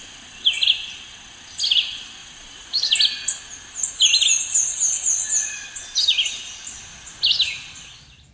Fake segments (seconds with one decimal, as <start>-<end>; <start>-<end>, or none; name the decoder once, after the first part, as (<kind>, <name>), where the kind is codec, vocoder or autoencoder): 2.2-2.9 (vocoder, Vocos); 4.5-5.5